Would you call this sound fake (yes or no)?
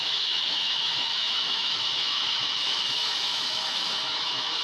yes